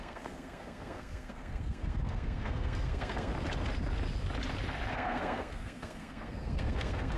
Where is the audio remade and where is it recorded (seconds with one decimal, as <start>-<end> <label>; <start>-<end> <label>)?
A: 0.0-3.3 remade; 3.3-4.9 recorded; 4.9-7.2 remade